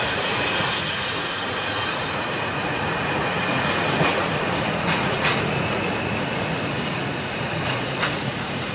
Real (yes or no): no